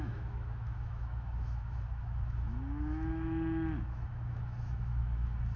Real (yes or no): no